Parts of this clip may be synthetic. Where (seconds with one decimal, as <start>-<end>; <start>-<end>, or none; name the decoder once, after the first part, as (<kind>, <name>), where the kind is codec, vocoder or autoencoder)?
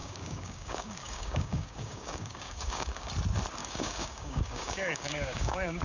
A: 0.0-3.1 (codec, DAC); 3.6-5.8